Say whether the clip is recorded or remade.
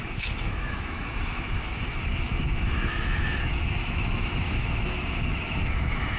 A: remade